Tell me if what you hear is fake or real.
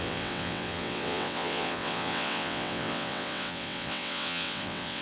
fake